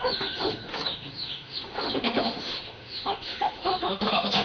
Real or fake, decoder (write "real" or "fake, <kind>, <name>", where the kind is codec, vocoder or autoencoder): fake, autoencoder, DAC-VAE